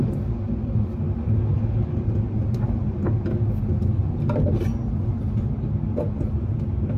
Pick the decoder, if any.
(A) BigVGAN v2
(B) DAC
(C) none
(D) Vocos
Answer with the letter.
C